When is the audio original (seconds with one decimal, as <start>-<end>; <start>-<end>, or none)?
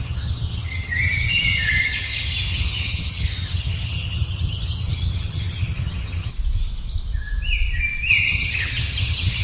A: 6.3-8.1